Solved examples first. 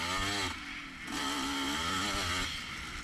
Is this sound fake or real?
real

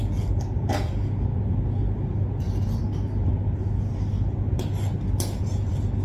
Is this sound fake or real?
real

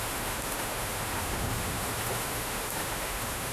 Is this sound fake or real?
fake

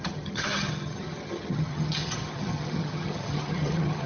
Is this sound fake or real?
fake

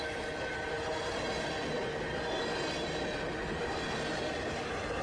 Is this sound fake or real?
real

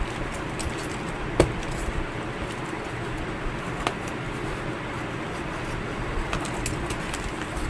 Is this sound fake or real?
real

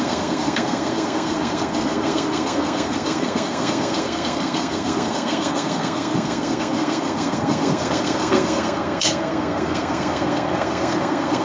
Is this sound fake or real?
fake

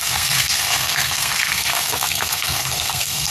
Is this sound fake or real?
fake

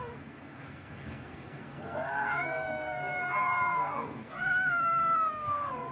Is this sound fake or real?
fake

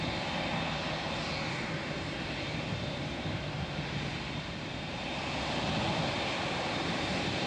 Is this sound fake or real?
real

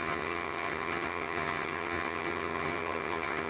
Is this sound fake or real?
fake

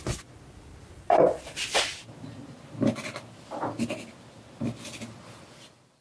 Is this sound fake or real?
real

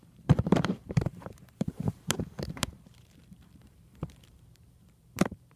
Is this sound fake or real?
fake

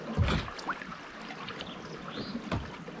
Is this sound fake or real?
real